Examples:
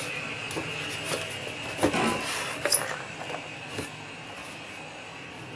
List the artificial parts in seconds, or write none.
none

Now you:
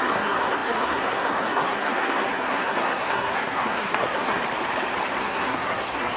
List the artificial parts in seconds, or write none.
0.0-4.4 (codec, SNAC); 5.2-6.2

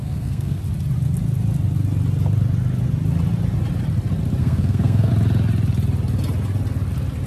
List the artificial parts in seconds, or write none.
0.0-0.6 (codec, SNAC); 4.4-5.1

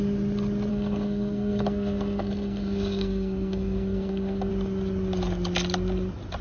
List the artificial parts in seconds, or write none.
0.7-4.5 (codec, SNAC)